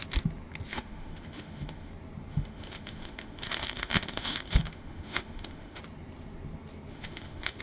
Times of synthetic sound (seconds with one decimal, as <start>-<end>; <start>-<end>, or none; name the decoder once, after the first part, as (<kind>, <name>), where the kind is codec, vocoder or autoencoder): 0.7-1.9 (autoencoder, DAC-VAE); 2.3-5.8; 6.9-7.6